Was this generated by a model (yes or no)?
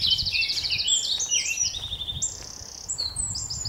no